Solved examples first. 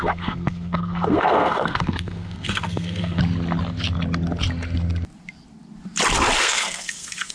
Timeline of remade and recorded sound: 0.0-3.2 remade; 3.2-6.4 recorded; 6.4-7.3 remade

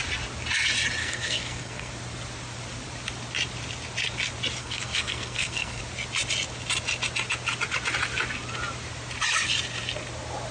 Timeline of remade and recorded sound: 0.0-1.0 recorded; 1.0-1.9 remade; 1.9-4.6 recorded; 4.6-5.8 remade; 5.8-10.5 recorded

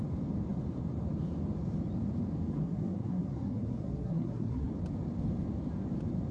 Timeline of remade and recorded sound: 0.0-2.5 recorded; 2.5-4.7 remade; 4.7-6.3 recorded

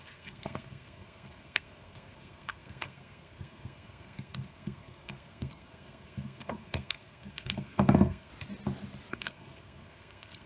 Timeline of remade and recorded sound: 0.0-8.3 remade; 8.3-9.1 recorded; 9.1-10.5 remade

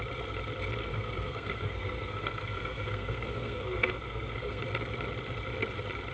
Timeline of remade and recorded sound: 0.0-0.9 recorded; 0.9-4.6 remade; 4.6-6.1 recorded

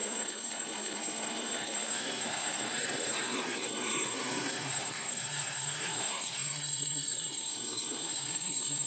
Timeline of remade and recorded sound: 0.0-8.9 remade

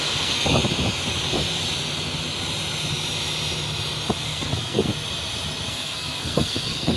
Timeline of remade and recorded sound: 0.0-0.6 remade; 0.6-4.2 recorded; 4.2-4.9 remade; 4.9-5.7 recorded; 5.7-7.0 remade

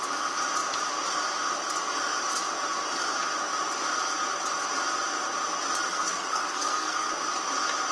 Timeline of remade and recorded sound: 0.0-5.9 recorded; 5.9-7.1 remade; 7.1-7.9 recorded